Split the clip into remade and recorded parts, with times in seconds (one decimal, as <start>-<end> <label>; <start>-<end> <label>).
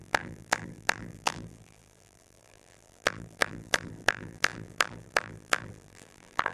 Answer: 0.0-6.5 remade